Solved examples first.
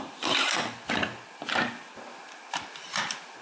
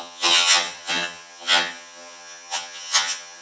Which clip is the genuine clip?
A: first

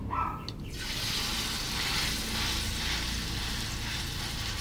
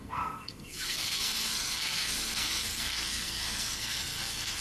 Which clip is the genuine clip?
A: first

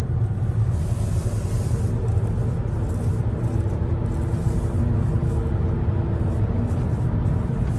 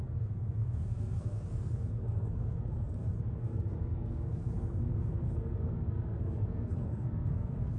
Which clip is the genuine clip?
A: first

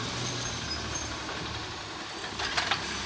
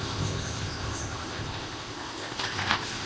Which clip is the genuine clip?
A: first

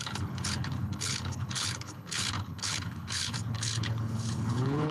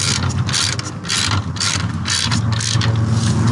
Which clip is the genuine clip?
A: second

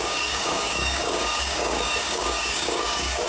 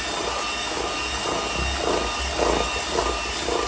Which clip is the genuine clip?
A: second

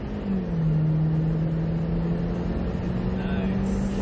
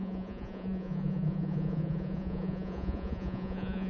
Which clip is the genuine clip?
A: first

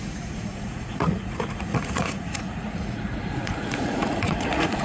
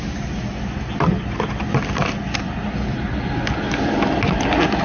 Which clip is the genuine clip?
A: second